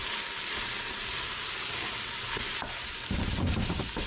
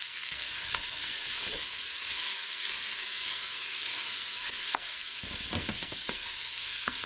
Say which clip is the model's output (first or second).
second